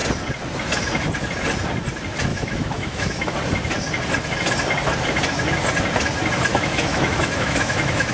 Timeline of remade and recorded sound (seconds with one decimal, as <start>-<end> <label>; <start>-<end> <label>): 0.0-2.3 recorded; 2.3-3.3 remade; 3.3-6.5 recorded; 6.5-8.1 remade